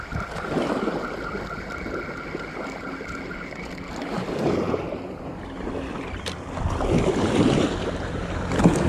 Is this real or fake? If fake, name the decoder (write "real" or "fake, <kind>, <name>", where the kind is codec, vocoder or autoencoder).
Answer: real